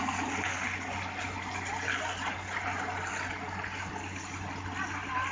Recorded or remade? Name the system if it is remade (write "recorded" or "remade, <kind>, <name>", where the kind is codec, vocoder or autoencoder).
recorded